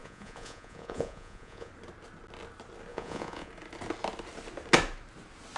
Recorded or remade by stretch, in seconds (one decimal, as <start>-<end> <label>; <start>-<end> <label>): 0.0-1.7 remade; 1.7-2.9 recorded; 2.9-3.5 remade; 3.5-5.6 recorded